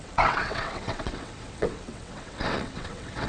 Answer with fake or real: fake